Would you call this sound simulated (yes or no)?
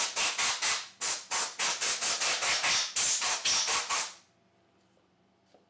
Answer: no